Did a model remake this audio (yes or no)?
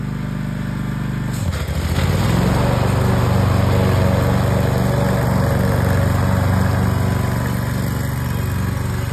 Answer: no